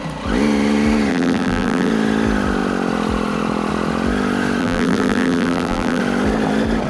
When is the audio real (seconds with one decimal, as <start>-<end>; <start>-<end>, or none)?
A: 0.0-1.1; 1.9-4.6; 6.0-6.9